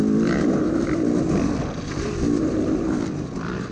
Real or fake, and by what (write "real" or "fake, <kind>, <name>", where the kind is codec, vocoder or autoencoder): real